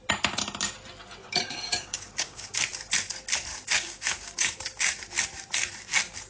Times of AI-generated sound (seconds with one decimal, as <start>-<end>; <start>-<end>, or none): 1.2-2.6; 3.5-5.0

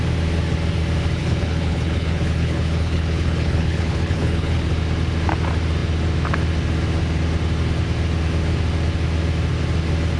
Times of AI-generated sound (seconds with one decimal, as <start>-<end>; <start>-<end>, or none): 1.2-4.7

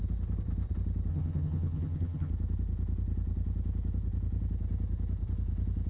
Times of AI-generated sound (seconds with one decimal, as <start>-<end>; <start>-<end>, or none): 1.1-2.3